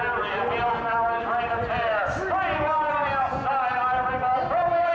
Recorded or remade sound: recorded